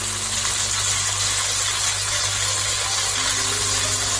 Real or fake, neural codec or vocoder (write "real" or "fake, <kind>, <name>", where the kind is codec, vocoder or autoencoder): real